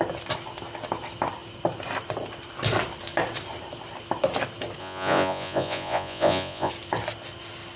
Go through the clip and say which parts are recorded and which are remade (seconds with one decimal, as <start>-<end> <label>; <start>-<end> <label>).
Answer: 0.0-4.8 recorded; 4.8-6.7 remade; 6.7-7.8 recorded